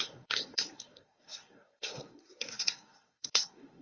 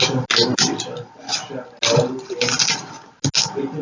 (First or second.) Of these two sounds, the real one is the second